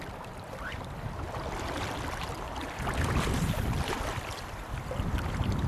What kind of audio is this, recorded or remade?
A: remade